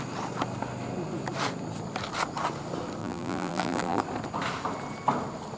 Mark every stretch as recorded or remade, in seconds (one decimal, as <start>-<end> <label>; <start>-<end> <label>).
0.0-3.0 recorded; 3.0-4.0 remade; 4.0-5.6 recorded